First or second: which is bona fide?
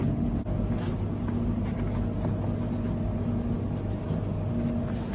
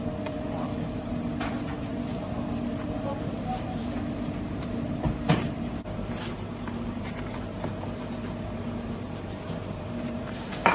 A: first